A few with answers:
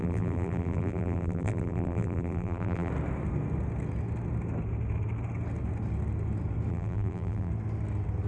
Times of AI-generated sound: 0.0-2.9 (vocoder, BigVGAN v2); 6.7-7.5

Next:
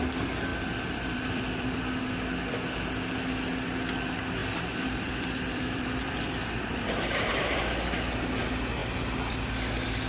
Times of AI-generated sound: 0.5-2.0 (vocoder, BigVGAN v2); 4.4-7.6

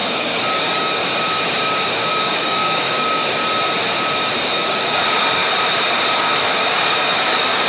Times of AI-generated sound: 0.0-1.0 (codec, DAC); 2.1-3.4; 4.5-5.4; 6.2-7.7

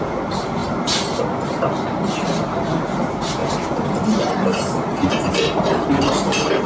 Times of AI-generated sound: 0.6-1.2 (vocoder, BigVGAN v2)